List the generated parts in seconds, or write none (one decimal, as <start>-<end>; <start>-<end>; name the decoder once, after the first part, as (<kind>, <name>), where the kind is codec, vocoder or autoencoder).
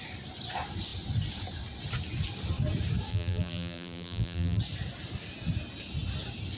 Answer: 3.1-4.6 (vocoder, BigVGAN v2)